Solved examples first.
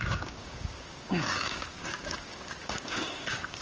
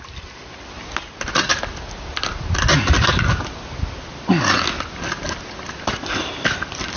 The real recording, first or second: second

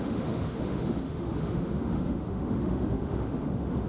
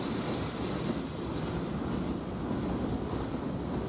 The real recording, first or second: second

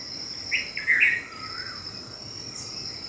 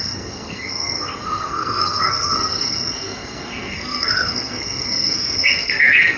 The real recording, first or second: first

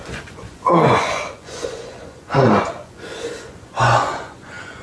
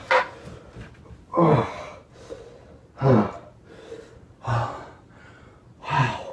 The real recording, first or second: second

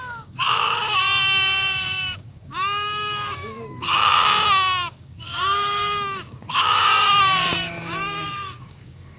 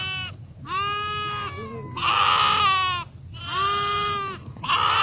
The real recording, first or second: second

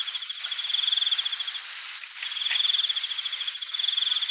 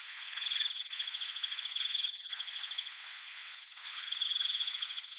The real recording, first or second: first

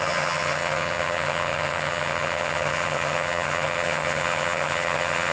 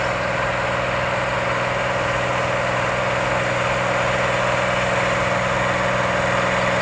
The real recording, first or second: second